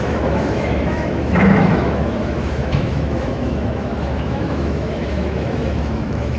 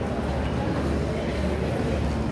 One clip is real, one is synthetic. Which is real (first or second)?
second